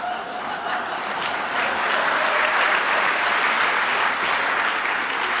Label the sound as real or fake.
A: real